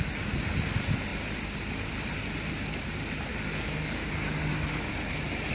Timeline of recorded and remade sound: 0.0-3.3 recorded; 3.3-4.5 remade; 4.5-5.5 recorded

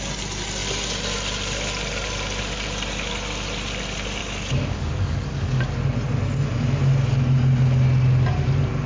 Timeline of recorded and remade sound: 0.0-4.2 recorded; 4.2-5.6 remade; 5.6-8.9 recorded

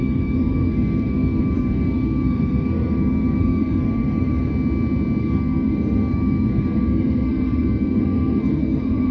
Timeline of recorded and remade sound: 0.0-4.5 remade; 4.5-5.2 recorded; 5.2-9.1 remade

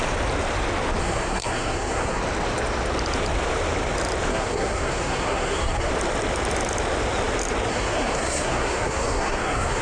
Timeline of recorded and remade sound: 0.0-1.0 recorded; 1.0-2.2 remade; 2.2-4.3 recorded; 4.3-5.9 remade; 5.9-7.7 recorded; 7.7-9.8 remade

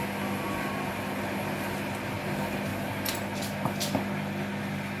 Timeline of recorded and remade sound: 0.0-5.0 recorded

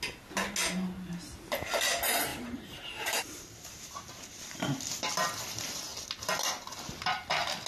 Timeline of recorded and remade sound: 0.0-2.3 recorded; 2.3-4.5 remade; 4.5-7.7 recorded

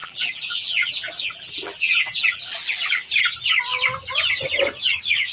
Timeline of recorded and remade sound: 0.0-3.2 remade; 3.2-5.3 recorded

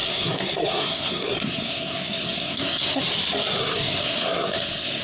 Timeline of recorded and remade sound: 0.0-3.0 remade; 3.0-3.6 recorded; 3.6-5.0 remade